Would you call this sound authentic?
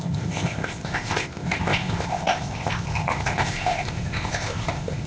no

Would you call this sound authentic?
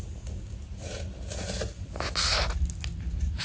yes